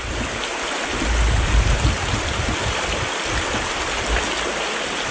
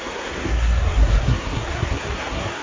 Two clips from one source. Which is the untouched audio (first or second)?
first